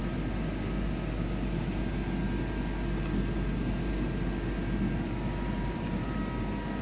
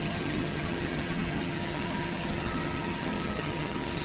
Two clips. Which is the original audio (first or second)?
first